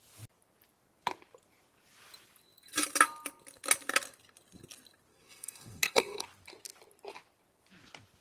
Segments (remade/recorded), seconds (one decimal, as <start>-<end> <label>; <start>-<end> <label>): 0.0-5.1 recorded; 5.1-6.2 remade; 6.2-8.2 recorded

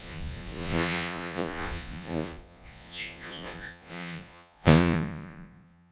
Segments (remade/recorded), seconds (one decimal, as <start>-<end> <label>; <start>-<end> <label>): 0.0-5.9 remade

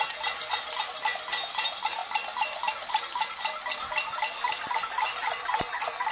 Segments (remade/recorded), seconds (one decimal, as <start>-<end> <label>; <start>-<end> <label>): 0.0-6.1 remade